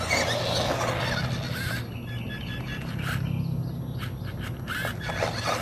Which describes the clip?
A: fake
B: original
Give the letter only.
B